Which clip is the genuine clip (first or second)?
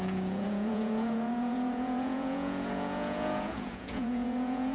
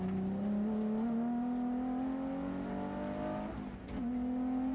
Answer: second